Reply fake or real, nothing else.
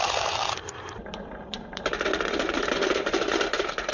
fake